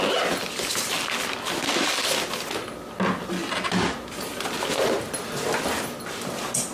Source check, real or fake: real